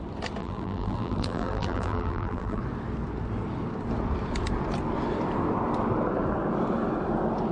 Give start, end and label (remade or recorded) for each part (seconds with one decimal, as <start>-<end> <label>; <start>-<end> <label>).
0.0-0.4 recorded; 0.4-2.6 remade; 2.6-7.5 recorded